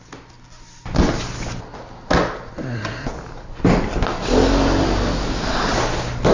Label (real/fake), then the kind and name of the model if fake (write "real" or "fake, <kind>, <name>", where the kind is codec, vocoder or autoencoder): real